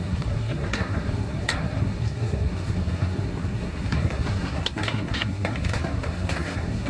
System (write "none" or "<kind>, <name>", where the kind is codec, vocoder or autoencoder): codec, SNAC